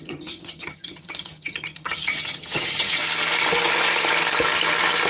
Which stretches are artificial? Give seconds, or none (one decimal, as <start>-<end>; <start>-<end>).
0.0-3.0